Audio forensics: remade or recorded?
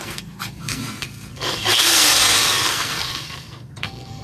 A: remade